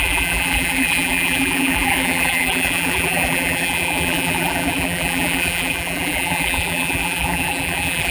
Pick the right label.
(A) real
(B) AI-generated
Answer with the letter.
B